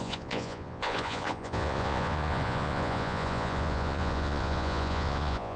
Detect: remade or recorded remade